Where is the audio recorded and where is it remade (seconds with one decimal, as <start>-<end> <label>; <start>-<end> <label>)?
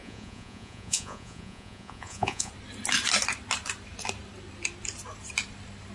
0.0-2.5 remade; 2.5-5.9 recorded